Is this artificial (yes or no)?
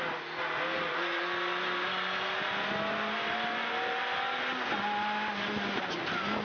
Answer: no